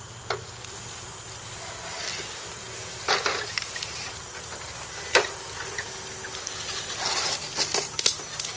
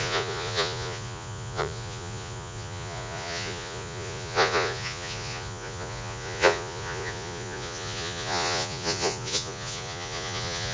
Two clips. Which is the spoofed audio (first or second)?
second